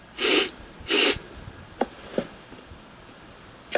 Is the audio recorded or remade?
remade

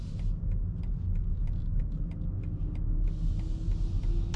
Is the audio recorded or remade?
recorded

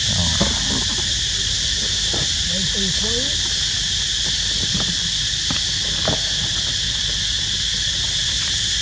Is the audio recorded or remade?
recorded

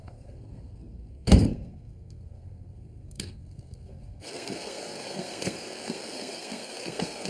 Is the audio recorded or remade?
remade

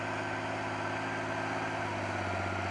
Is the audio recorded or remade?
recorded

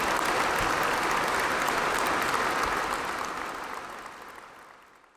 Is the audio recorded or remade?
recorded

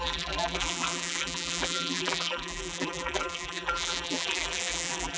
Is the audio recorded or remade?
remade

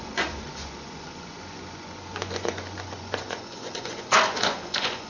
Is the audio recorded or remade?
remade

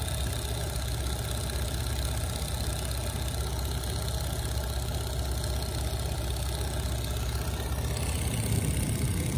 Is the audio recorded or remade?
recorded